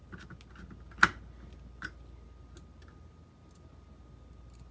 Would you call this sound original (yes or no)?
yes